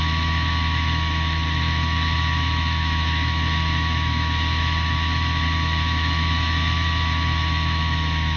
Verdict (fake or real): fake